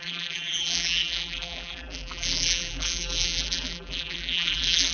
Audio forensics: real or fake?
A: fake